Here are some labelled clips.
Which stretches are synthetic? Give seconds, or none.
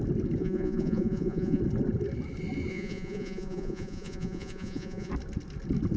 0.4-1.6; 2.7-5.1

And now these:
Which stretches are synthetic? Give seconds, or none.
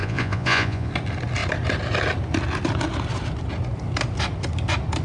0.0-0.9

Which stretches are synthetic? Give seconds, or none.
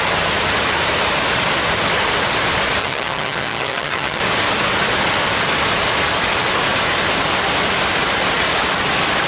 2.8-4.2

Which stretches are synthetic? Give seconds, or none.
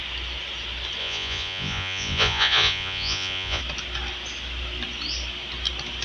1.0-3.6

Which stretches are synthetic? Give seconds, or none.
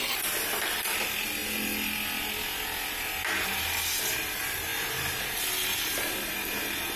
none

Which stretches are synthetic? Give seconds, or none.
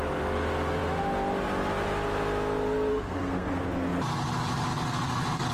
2.9-3.5